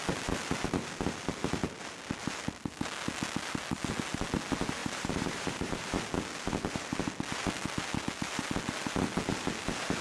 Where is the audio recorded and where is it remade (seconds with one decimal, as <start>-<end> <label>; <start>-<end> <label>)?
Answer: 0.0-4.8 recorded; 4.8-5.9 remade; 5.9-10.0 recorded